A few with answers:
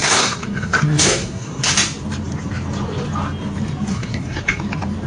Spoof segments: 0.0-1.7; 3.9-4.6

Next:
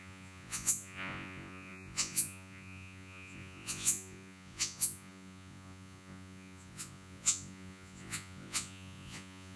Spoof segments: 0.0-9.6

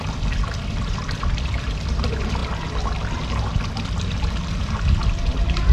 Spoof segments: 0.0-2.4; 4.6-5.7

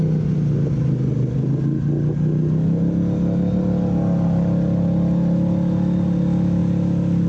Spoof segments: none

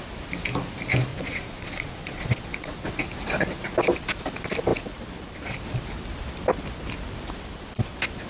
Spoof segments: 1.1-2.9

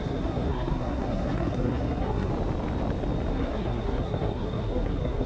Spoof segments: 0.0-2.3; 3.3-5.3

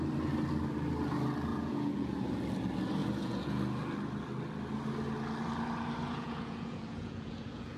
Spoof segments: 1.5-2.1; 3.0-3.6; 6.0-7.8

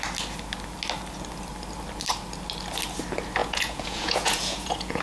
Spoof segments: 3.4-5.0